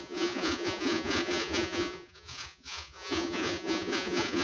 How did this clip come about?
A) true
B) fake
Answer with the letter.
B